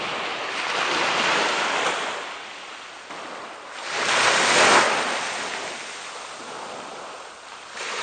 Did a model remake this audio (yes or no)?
no